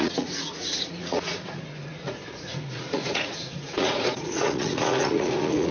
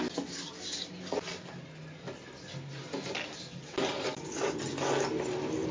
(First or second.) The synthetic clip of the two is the first